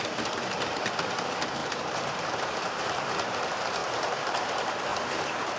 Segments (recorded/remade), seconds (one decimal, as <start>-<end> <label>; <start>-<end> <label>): 0.0-1.6 recorded; 1.6-3.1 remade; 3.1-3.8 recorded; 3.8-4.4 remade; 4.4-4.9 recorded; 4.9-5.6 remade